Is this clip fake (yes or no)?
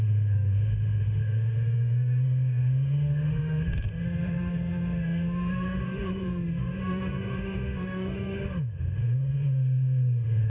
yes